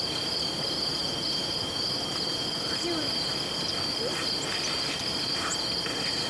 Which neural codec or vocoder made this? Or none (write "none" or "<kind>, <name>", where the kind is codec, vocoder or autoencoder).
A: none